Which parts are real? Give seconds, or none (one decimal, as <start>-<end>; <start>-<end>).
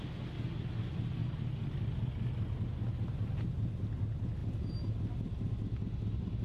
0.0-1.2; 2.1-6.4